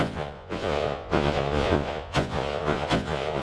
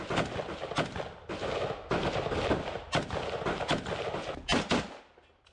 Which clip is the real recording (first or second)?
second